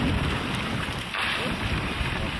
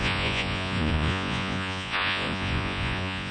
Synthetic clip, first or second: second